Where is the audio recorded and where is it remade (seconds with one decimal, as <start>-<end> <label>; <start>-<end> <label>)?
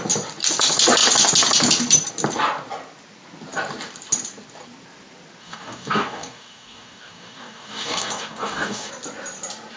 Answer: 0.0-5.4 recorded; 5.4-8.9 remade; 8.9-9.8 recorded